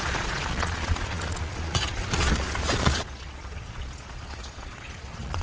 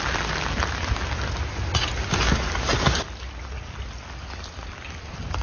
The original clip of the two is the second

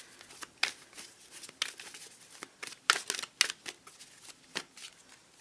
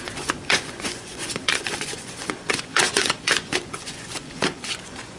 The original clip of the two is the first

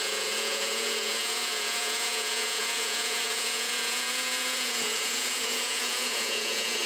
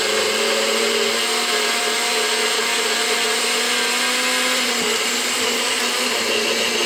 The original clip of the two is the second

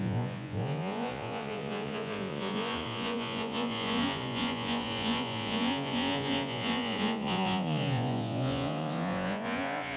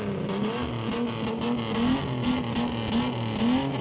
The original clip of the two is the second